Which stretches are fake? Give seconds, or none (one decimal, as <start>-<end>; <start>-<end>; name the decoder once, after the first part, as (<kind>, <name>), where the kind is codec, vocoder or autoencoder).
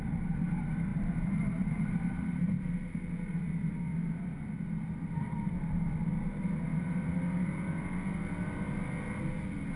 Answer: 0.9-3.4 (vocoder, BigVGAN v2)